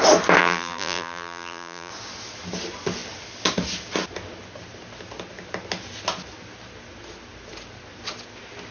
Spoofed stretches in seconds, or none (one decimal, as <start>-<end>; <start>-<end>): 0.4-1.9